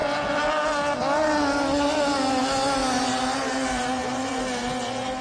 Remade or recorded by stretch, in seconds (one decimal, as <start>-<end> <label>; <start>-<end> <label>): 0.0-5.2 recorded